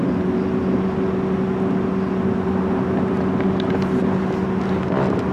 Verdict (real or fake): real